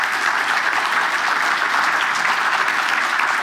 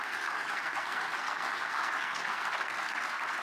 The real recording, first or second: first